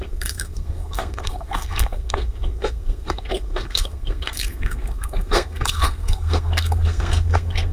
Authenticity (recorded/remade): remade